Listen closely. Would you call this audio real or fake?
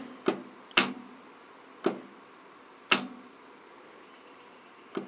real